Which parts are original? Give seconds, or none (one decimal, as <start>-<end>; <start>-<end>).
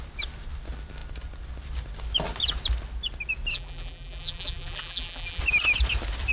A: 0.0-3.5; 5.4-6.3